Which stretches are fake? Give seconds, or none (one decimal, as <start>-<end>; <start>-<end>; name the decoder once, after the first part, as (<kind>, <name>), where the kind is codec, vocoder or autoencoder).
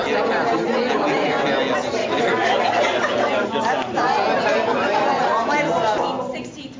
2.0-2.6 (codec, DAC)